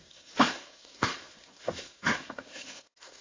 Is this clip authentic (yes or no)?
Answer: no